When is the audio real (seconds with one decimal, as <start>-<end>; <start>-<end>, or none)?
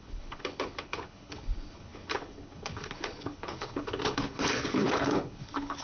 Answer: none